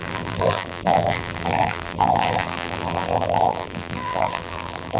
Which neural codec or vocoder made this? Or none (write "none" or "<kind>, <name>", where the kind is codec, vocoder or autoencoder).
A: vocoder, BigVGAN v2